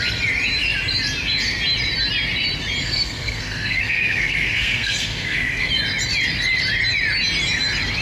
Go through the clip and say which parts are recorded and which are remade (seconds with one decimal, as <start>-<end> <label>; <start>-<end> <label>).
0.0-2.8 recorded; 2.8-5.7 remade; 5.7-8.0 recorded